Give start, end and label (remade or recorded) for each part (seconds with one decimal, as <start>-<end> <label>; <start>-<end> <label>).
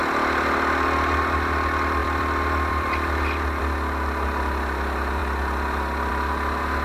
0.0-2.0 recorded; 2.0-3.6 remade; 3.6-6.8 recorded